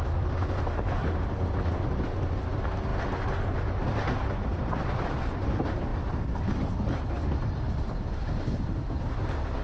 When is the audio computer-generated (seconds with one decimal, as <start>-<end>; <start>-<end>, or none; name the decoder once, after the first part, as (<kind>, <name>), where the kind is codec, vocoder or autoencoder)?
none